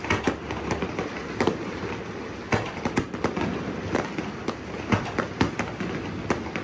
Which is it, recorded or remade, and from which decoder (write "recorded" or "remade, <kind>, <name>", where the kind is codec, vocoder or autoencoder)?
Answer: recorded